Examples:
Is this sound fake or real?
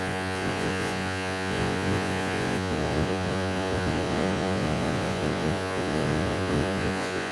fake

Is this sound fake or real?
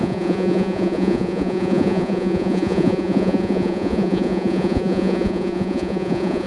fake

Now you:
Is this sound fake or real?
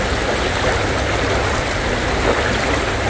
real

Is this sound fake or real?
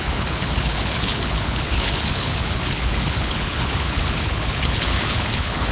fake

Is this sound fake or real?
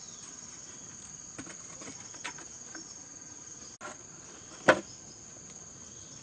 real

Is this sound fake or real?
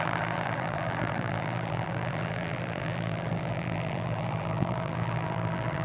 fake